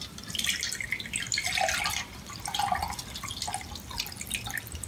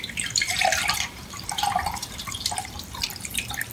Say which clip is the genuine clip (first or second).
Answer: first